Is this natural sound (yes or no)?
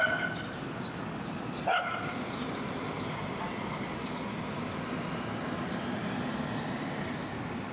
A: yes